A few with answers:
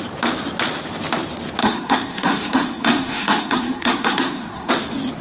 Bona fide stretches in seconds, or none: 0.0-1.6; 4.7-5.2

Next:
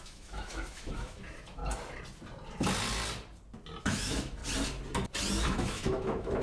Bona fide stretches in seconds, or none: 1.6-3.8; 4.4-5.4

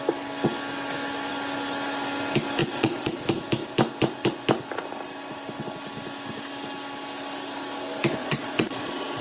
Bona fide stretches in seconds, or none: 0.0-2.6; 3.2-8.2

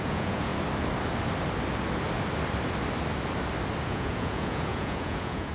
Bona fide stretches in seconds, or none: 0.5-3.8

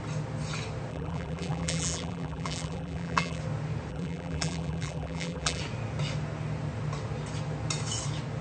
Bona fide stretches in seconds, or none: 0.0-0.9; 3.4-3.9; 5.6-8.4